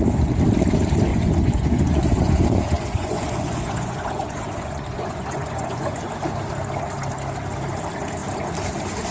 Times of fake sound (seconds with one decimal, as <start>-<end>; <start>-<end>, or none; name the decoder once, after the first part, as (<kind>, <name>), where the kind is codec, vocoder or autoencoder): 1.1-6.0 (vocoder, Vocos)